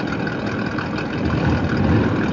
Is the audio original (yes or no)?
yes